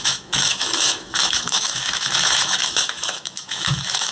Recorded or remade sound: remade